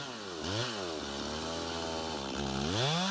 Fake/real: real